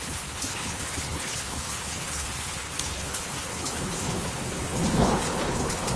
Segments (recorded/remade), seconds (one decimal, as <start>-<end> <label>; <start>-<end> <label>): 0.0-6.0 remade